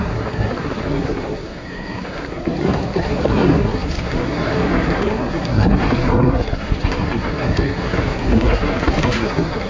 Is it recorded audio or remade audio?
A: remade